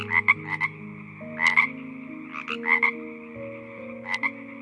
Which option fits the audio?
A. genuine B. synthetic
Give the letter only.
A